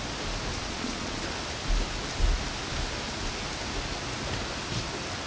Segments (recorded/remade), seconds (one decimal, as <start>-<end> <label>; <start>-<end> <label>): 0.0-0.6 recorded; 0.6-1.2 remade; 1.2-5.3 recorded